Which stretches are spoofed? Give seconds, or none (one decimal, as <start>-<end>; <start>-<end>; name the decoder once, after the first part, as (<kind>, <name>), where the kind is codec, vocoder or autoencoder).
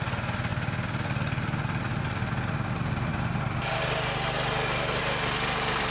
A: none